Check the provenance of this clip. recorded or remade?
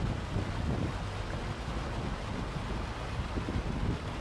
recorded